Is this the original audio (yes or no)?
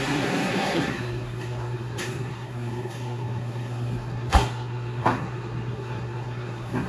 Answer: no